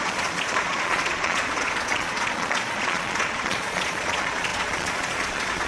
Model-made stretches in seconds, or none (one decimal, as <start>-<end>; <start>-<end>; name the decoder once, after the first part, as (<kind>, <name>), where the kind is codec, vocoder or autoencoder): 0.0-5.7 (vocoder, Vocos)